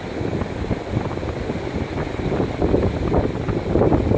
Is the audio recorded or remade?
recorded